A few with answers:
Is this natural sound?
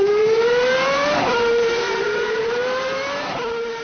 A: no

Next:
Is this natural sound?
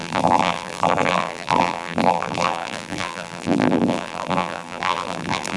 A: no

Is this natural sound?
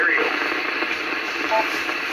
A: no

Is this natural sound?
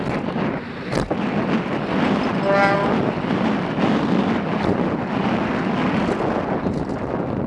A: yes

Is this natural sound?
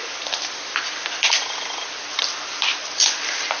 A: no